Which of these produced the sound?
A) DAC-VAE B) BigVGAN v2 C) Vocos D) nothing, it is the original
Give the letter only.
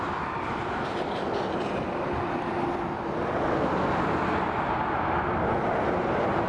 D